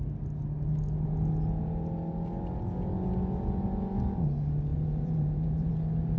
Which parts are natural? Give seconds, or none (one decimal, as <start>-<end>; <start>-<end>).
0.0-4.7; 5.7-6.2